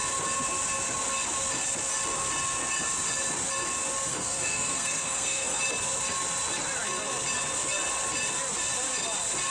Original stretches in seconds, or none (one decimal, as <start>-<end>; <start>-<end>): 0.0-4.1; 5.6-9.5